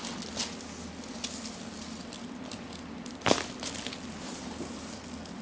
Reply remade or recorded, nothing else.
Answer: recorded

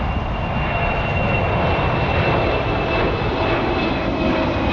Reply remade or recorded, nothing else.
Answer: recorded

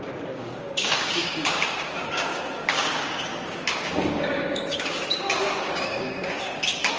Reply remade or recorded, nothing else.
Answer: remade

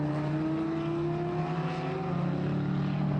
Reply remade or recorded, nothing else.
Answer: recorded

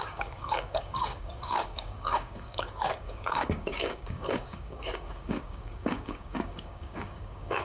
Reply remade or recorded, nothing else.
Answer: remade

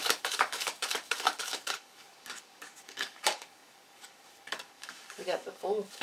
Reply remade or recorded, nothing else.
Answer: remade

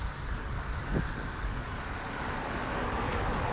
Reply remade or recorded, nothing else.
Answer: remade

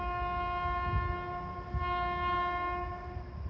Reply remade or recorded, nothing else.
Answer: recorded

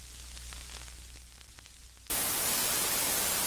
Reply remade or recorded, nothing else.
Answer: recorded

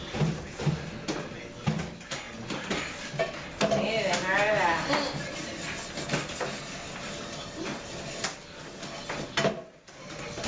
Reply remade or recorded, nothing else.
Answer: recorded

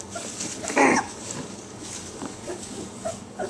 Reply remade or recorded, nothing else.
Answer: remade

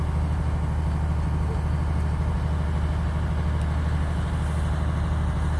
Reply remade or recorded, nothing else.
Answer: recorded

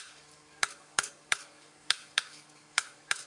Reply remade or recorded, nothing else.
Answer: remade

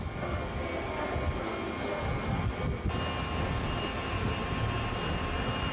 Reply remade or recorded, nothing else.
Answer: recorded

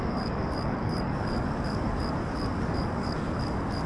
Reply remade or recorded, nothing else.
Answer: remade